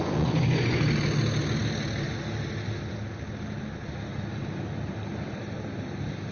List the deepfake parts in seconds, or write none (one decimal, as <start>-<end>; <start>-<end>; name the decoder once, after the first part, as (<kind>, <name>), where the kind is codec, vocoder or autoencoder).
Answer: 0.0-0.8 (vocoder, Vocos)